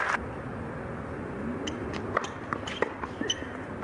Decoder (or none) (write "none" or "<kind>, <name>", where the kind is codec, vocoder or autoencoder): none